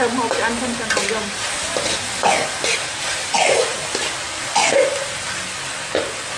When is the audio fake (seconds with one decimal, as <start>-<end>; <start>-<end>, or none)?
none